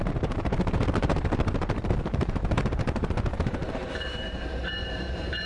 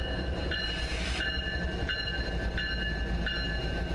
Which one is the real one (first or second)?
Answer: second